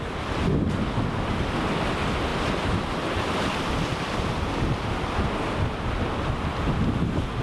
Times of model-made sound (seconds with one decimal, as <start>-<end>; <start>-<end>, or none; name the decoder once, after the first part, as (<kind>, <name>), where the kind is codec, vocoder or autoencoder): 2.3-4.9 (vocoder, BigVGAN v2)